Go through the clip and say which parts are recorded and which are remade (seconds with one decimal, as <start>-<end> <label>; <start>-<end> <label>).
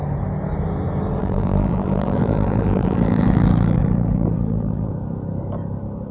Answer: 0.0-1.2 recorded; 1.2-4.9 remade; 4.9-6.1 recorded